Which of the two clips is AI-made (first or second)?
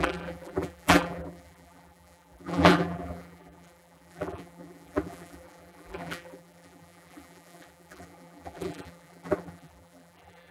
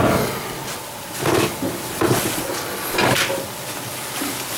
first